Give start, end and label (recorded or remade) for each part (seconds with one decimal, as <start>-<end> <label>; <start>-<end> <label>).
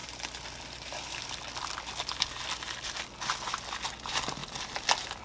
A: 0.0-3.1 remade; 3.1-5.2 recorded